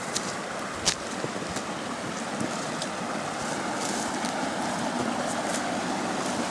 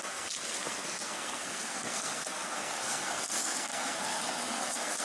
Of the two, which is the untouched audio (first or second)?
first